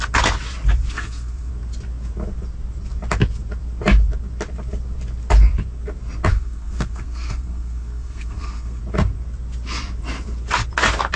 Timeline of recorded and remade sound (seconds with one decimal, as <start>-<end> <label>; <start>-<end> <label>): 0.0-0.9 recorded; 0.9-1.5 remade; 1.5-6.3 recorded; 6.3-8.8 remade; 8.8-11.2 recorded